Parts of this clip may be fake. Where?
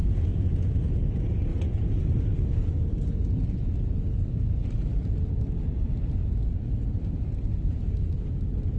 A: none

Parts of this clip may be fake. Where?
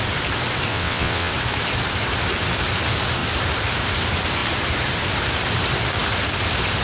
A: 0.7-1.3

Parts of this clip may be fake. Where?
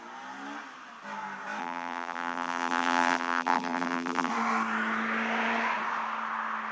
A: 1.6-4.3